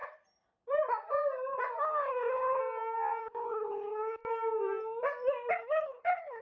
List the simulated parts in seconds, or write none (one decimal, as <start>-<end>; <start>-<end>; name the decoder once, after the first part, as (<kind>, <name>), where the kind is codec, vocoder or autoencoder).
1.8-2.6 (codec, HILCodec); 3.2-4.2; 5.5-6.4